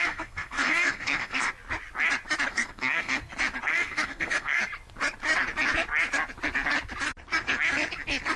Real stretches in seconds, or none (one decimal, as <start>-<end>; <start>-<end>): 1.5-2.5; 3.2-3.7; 4.6-8.4